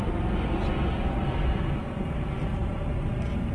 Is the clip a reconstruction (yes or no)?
no